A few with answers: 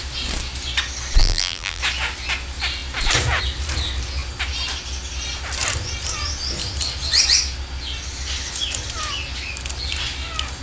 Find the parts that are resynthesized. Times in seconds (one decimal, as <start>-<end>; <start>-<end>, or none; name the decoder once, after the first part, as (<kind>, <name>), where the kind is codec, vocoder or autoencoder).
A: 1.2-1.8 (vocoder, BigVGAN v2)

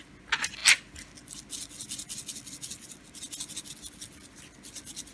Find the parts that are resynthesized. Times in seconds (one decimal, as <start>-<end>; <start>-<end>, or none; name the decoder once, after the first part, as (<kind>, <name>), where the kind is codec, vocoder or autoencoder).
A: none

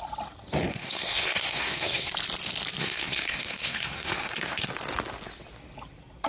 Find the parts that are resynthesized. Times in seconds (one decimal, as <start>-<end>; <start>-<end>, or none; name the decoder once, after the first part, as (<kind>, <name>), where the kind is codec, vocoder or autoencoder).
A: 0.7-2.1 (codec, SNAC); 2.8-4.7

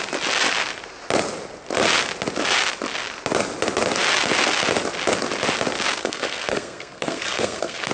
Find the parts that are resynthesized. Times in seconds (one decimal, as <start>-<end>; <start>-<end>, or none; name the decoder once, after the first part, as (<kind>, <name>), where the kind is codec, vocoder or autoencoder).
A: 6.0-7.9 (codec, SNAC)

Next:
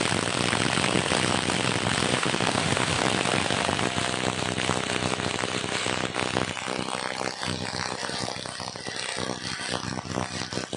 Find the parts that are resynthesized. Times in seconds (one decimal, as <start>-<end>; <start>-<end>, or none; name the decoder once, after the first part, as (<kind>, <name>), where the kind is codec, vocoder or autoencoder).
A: 2.1-3.0 (autoencoder, DAC-VAE)

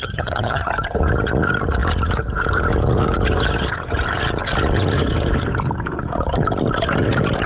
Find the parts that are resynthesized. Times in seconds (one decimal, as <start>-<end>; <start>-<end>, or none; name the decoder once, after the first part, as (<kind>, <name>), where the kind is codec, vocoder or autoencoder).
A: 0.0-0.7 (vocoder, HiFi-GAN)